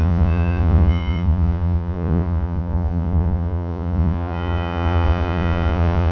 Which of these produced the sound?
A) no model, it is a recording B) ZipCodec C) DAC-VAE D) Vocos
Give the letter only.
D